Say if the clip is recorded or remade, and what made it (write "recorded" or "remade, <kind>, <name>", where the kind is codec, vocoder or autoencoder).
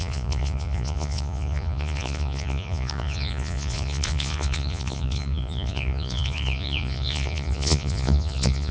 remade, vocoder, Vocos